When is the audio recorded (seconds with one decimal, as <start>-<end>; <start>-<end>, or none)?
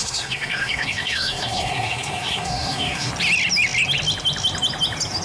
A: 3.1-5.2